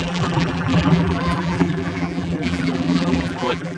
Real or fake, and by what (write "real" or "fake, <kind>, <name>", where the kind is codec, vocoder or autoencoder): fake, vocoder, BigVGAN v2